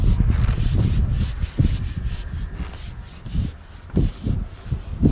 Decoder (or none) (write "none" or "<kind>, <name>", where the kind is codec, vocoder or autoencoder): none